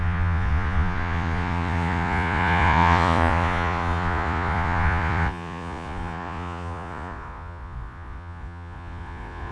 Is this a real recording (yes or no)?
no